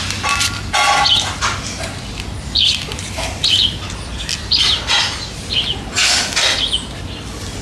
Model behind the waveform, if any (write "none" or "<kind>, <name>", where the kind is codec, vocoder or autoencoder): none